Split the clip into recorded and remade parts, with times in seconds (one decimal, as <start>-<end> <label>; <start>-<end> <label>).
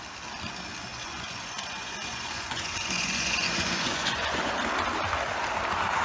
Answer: 0.0-0.9 recorded; 0.9-4.5 remade; 4.5-6.0 recorded